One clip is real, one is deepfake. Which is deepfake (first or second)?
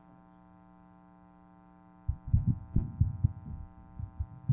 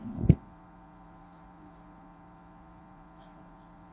second